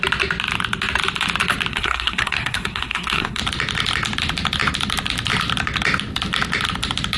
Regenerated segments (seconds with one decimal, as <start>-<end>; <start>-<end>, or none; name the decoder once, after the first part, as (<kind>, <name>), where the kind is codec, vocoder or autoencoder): 1.7-3.4 (codec, SNAC)